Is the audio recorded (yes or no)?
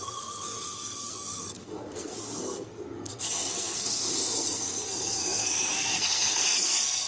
no